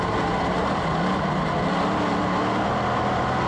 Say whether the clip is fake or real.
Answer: real